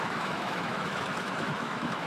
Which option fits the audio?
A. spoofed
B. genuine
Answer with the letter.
A